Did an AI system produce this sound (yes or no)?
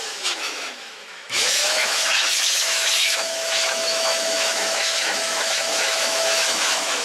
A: yes